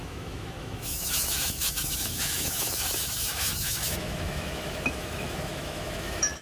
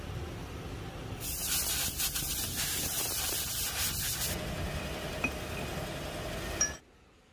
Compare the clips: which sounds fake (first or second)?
first